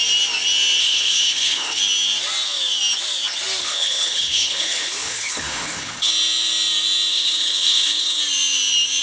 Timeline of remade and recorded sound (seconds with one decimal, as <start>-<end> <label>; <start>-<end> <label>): 0.0-0.8 recorded; 0.8-1.8 remade; 1.8-3.6 recorded; 3.6-6.1 remade; 6.1-7.1 recorded; 7.1-8.2 remade; 8.2-9.0 recorded

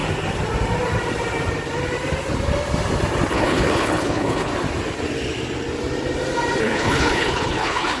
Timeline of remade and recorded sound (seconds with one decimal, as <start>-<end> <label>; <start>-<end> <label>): 0.0-3.3 recorded; 3.3-4.5 remade; 4.5-6.6 recorded; 6.6-8.0 remade

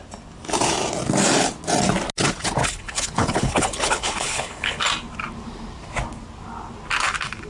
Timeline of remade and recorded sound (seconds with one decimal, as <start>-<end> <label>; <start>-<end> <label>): 0.0-2.6 recorded; 2.6-4.8 remade; 4.8-7.5 recorded

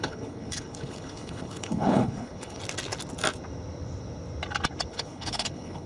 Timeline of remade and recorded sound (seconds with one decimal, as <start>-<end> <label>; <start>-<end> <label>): 0.0-2.6 remade; 2.6-4.9 recorded; 4.9-5.9 remade